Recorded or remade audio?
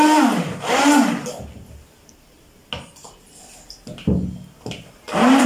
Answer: recorded